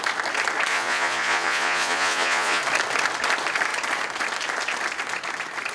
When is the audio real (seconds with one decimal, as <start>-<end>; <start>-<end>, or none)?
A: 0.0-0.7; 2.6-5.7